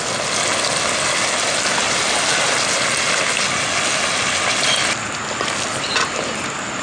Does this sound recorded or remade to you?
recorded